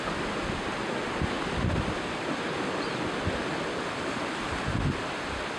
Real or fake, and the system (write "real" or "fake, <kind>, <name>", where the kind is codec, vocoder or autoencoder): real